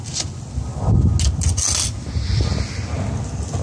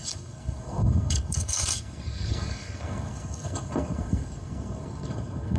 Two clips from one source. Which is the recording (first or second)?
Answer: first